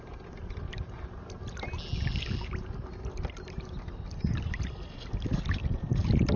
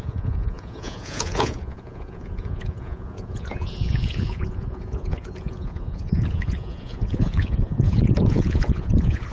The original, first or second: first